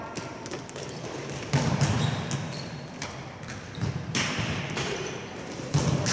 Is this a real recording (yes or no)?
no